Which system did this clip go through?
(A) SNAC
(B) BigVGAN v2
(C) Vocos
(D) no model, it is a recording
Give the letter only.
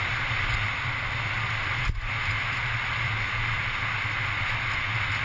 D